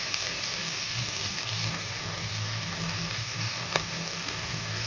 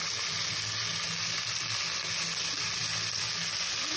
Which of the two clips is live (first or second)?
second